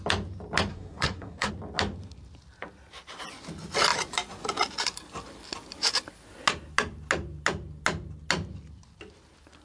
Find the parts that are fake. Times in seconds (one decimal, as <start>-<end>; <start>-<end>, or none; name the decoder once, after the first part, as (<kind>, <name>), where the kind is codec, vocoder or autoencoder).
0.7-1.5 (codec, SNAC)